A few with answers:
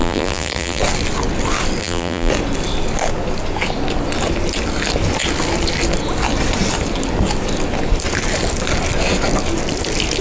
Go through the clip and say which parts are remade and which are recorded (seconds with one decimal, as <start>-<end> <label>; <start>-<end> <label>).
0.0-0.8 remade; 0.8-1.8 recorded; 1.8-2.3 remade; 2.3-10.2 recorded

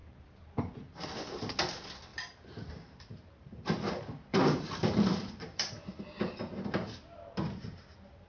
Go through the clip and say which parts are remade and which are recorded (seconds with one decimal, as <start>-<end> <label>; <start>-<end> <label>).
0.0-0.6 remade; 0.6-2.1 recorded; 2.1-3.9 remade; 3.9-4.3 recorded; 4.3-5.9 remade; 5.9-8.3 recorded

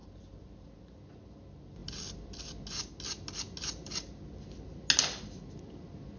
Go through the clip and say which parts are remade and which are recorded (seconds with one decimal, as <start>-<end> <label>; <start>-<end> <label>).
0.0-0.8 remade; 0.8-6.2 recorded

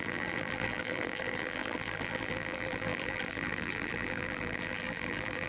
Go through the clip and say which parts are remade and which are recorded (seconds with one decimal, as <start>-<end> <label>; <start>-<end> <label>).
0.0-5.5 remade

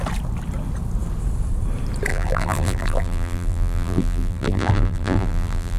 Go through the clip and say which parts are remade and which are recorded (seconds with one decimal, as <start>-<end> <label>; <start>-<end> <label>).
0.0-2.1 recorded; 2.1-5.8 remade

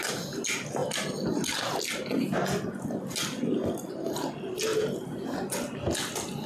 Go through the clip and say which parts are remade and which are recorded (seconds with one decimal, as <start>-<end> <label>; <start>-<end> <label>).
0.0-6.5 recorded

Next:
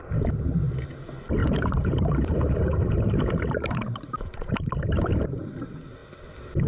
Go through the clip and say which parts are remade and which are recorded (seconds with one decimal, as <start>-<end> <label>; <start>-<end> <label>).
0.0-1.4 recorded; 1.4-5.4 remade; 5.4-6.7 recorded

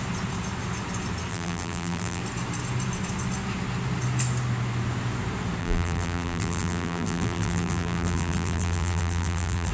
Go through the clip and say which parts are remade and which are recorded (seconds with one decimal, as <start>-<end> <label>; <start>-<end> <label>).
0.0-1.3 recorded; 1.3-2.2 remade; 2.2-5.6 recorded; 5.6-9.7 remade